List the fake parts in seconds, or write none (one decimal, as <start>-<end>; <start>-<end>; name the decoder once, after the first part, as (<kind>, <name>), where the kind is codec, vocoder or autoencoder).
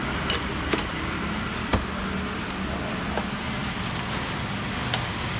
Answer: none